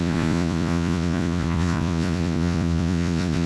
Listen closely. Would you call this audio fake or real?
fake